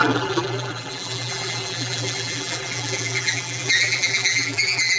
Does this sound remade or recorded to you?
remade